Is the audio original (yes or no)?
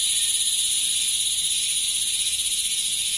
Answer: yes